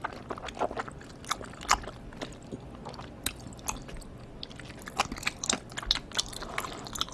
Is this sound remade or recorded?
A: recorded